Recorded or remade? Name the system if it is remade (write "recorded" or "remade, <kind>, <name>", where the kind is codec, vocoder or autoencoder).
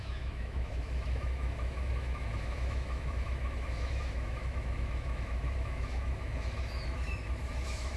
remade, autoencoder, DAC-VAE